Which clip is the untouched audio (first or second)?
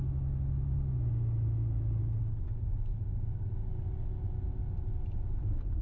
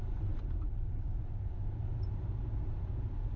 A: first